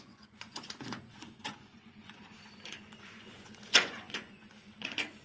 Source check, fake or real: fake